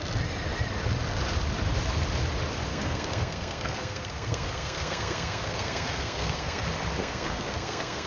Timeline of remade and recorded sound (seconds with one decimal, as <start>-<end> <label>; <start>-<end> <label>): 0.0-2.7 recorded; 2.7-6.6 remade; 6.6-7.0 recorded; 7.0-8.1 remade